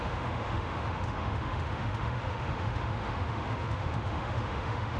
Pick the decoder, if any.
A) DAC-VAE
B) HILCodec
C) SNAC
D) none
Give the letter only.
A